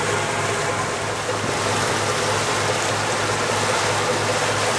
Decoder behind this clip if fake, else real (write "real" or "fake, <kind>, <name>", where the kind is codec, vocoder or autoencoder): real